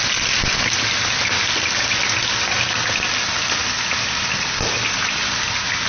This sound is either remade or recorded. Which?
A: recorded